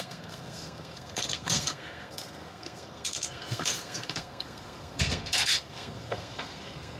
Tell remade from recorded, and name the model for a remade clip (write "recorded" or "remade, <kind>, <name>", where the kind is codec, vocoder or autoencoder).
remade, codec, SNAC